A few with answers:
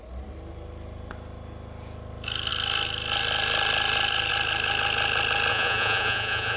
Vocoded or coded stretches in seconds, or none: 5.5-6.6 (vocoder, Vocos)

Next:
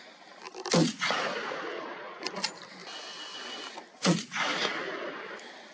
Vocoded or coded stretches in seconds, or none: 0.8-2.3 (vocoder, Vocos); 3.9-4.7

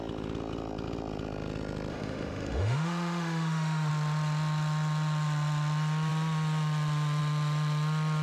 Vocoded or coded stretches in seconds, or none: 1.9-3.9 (autoencoder, DAC-VAE)

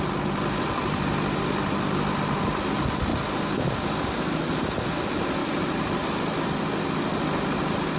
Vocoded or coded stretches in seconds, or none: none

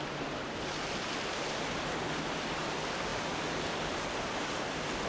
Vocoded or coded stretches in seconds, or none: none